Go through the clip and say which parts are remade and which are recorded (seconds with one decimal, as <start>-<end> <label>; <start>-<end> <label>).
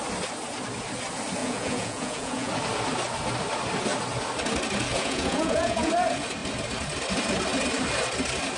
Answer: 0.0-1.4 recorded; 1.4-2.5 remade; 2.5-4.9 recorded; 4.9-5.9 remade; 5.9-8.6 recorded